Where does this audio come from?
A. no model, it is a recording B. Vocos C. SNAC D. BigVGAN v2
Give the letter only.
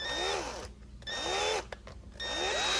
A